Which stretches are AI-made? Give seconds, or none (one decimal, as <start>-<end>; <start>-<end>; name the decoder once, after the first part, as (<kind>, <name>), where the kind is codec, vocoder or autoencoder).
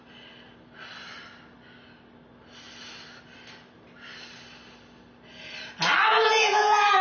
6.1-7.0 (vocoder, Vocos)